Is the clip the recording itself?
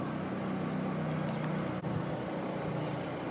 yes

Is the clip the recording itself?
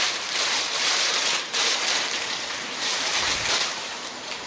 no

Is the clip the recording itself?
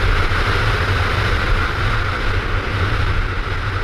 yes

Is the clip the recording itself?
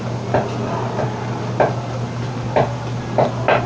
yes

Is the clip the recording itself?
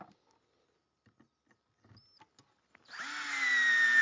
yes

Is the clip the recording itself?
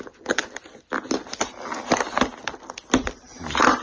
yes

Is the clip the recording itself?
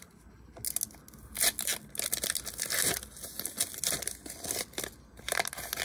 yes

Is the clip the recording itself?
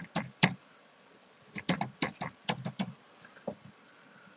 no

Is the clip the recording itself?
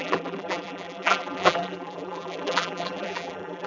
no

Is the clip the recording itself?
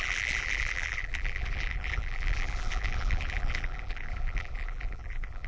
no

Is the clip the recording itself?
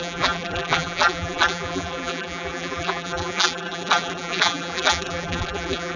no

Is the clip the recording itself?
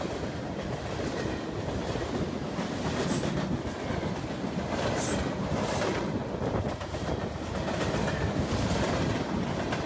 yes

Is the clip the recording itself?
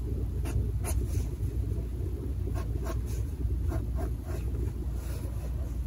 yes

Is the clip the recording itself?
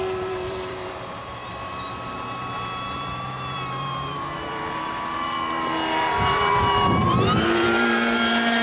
no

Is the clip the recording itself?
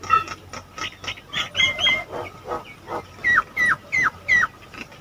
yes